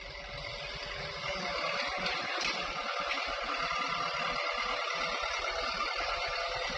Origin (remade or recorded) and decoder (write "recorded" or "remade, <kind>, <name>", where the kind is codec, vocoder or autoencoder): recorded